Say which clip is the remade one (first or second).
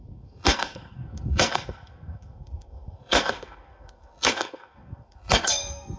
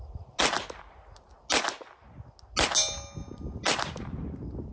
first